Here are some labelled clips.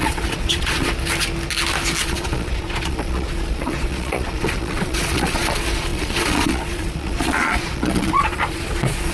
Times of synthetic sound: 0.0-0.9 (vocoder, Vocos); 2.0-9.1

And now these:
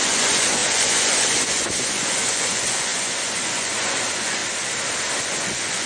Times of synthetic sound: 0.0-4.4 (vocoder, Vocos); 5.2-5.9